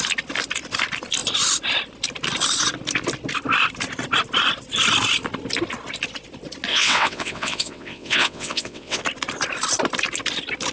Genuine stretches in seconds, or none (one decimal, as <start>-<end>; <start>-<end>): 0.0-6.7; 9.0-10.7